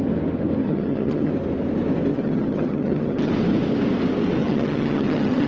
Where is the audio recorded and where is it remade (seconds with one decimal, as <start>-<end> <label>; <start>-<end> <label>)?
0.0-0.6 recorded; 0.6-1.3 remade; 1.3-2.1 recorded; 2.1-3.3 remade; 3.3-4.4 recorded; 4.4-5.5 remade